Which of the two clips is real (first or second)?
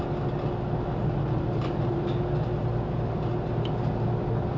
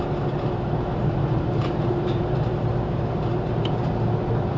first